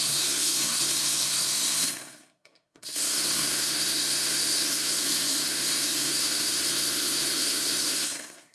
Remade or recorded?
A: remade